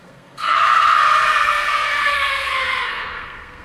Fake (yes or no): yes